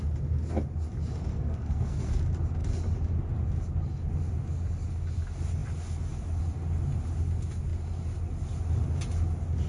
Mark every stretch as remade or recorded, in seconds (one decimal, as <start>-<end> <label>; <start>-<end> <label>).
0.0-1.3 recorded; 1.3-2.2 remade; 2.2-9.7 recorded